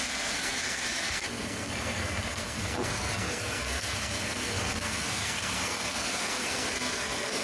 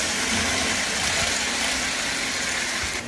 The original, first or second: second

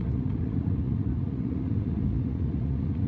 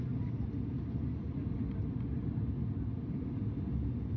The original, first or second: second